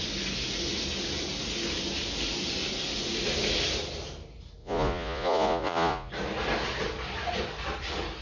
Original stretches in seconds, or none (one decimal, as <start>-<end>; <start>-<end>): 0.0-4.6; 6.1-8.2